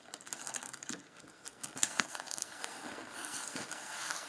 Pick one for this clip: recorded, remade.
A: remade